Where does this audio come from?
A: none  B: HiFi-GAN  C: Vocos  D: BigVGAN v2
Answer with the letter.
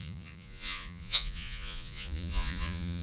C